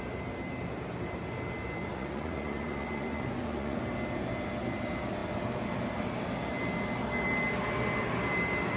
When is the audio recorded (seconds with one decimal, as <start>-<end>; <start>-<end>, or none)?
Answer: 0.0-1.9; 3.8-8.8